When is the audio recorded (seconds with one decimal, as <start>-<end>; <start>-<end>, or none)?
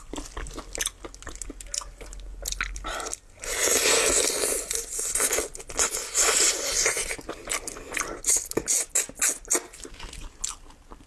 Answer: 0.0-11.1